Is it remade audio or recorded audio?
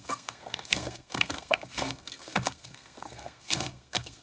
remade